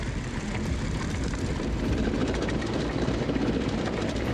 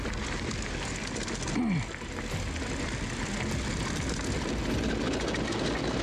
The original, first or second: second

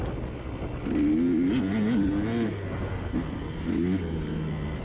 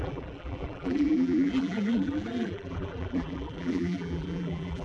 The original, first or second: first